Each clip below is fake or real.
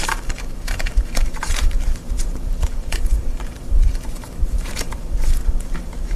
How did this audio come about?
fake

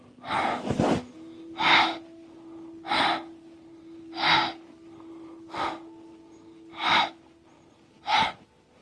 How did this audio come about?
real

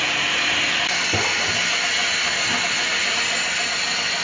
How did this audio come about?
real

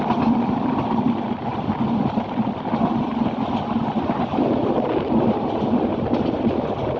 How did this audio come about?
real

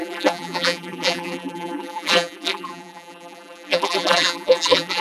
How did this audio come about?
fake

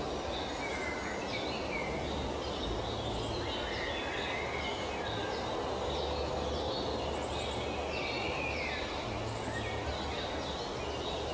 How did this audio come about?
real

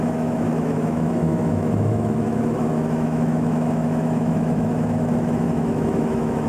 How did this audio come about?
fake